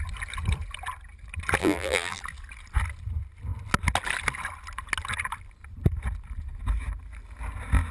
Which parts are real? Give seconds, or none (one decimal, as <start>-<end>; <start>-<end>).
0.0-1.6; 2.2-7.9